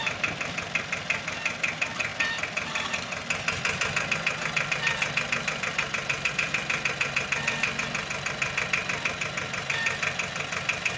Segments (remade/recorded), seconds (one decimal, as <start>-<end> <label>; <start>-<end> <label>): 0.0-11.0 recorded